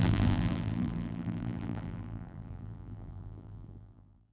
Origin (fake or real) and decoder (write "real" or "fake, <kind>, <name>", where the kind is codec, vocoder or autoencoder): fake, vocoder, BigVGAN v2